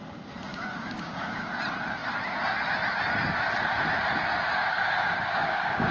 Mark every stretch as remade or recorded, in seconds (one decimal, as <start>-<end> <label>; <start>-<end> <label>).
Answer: 0.0-0.5 recorded; 0.5-1.5 remade; 1.5-4.6 recorded; 4.6-5.9 remade